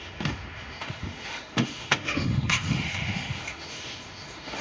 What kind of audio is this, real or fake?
fake